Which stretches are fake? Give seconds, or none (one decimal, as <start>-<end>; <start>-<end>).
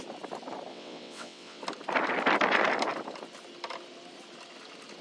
0.7-1.6